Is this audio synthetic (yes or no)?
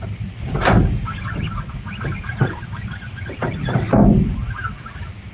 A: no